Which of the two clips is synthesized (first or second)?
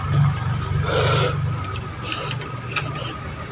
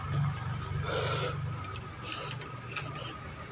first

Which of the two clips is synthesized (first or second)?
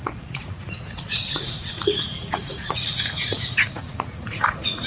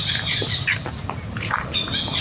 first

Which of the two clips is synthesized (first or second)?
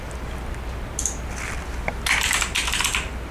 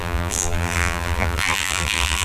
second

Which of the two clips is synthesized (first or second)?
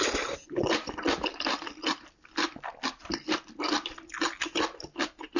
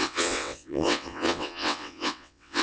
second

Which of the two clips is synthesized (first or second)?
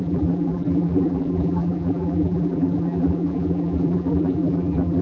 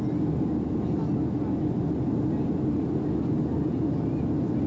first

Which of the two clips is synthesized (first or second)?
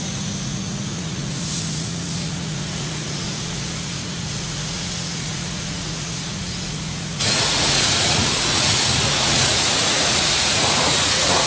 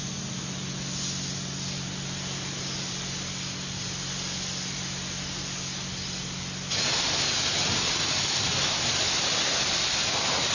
first